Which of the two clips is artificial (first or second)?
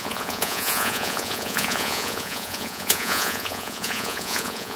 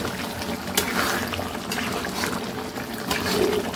first